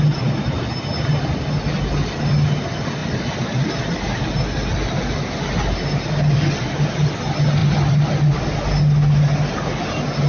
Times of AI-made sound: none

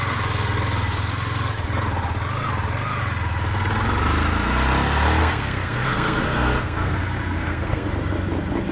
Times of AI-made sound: 5.2-7.9